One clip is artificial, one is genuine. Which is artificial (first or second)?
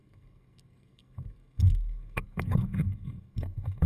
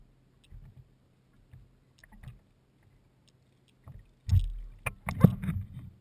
first